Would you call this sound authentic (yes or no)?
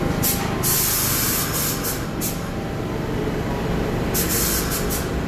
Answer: yes